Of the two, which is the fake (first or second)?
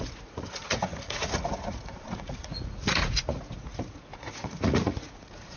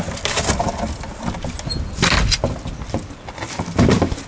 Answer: first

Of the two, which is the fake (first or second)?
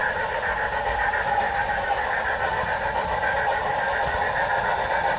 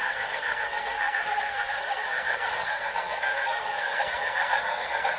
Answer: second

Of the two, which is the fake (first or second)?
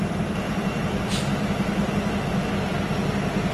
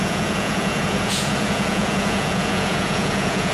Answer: second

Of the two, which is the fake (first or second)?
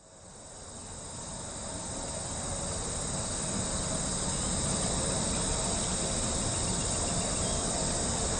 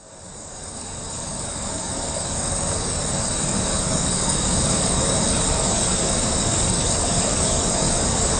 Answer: second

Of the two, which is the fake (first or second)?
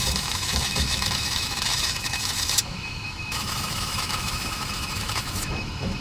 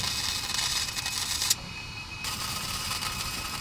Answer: first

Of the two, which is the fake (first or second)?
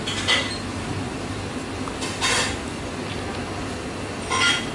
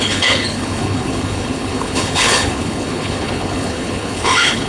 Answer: second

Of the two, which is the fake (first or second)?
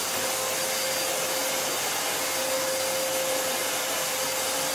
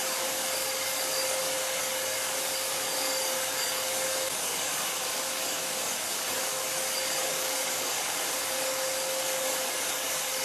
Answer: second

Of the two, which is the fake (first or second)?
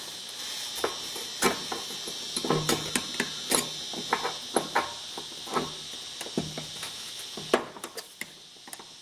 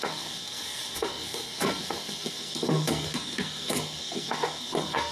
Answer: second